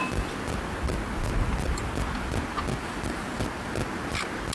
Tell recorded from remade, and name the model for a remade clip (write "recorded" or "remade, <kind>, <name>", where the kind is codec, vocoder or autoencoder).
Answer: recorded